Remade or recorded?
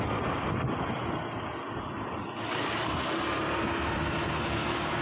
recorded